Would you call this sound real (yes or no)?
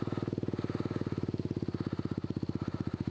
yes